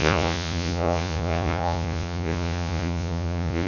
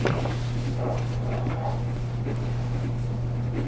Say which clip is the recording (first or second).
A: second